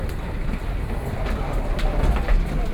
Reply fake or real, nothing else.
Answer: real